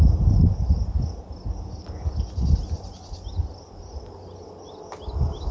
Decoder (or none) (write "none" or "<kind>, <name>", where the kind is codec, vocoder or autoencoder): none